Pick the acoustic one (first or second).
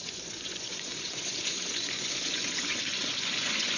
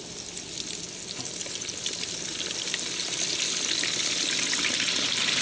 second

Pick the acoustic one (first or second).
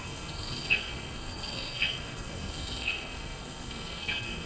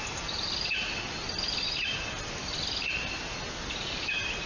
second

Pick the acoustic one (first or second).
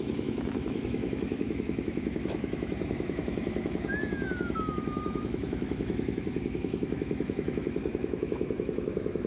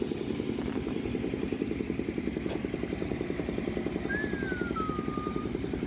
second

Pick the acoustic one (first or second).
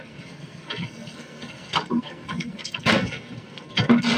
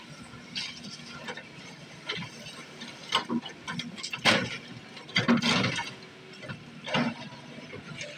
second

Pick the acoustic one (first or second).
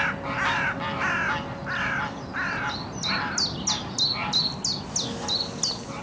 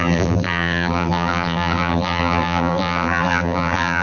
first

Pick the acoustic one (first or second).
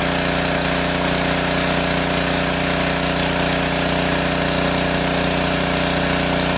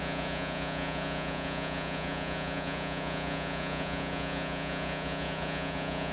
first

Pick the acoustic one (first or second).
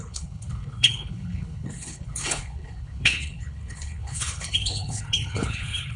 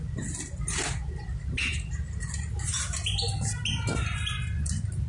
second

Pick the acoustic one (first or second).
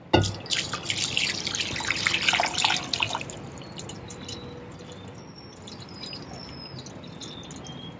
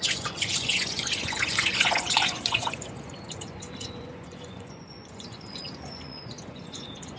first